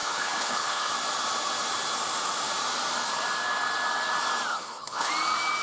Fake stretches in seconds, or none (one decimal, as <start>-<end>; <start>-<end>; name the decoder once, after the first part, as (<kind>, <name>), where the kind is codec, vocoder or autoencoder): 0.0-0.9 (codec, HILCodec); 4.5-5.1